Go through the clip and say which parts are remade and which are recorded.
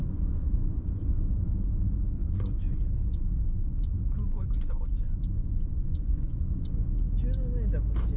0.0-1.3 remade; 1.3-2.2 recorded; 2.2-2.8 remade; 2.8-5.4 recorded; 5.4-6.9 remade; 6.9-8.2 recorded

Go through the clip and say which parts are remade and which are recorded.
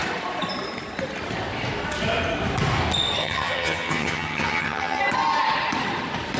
0.0-3.2 recorded; 3.2-5.0 remade; 5.0-6.4 recorded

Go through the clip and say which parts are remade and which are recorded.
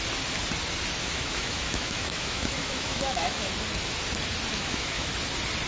0.0-1.0 recorded; 1.0-3.5 remade; 3.5-4.5 recorded; 4.5-5.1 remade; 5.1-5.7 recorded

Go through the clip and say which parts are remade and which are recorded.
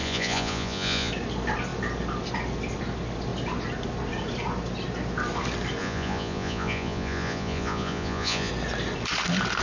0.0-1.1 remade; 1.1-5.8 recorded; 5.8-8.5 remade; 8.5-9.6 recorded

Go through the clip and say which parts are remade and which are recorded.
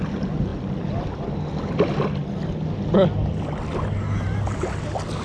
0.0-5.2 recorded